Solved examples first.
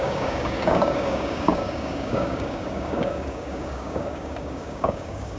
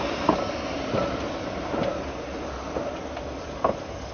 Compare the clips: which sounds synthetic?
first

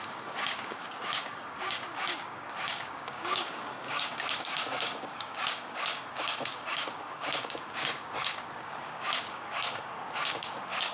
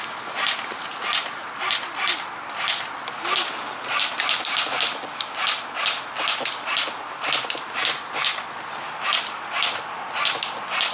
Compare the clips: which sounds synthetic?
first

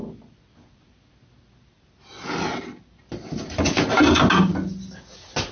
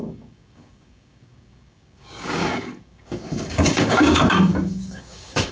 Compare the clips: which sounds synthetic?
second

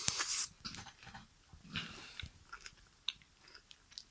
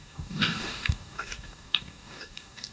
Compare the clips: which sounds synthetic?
second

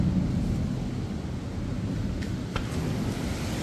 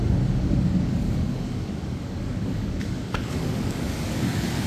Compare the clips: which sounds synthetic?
second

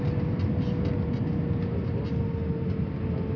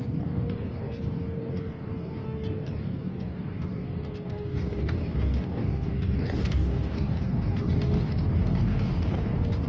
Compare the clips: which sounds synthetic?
second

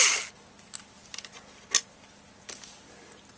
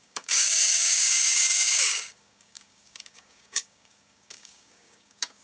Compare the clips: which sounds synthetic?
second